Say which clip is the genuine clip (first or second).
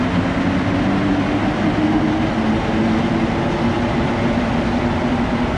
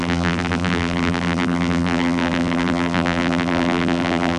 first